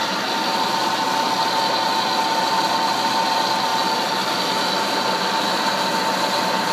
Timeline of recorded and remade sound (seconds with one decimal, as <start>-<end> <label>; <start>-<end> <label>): 0.0-0.9 remade; 0.9-6.7 recorded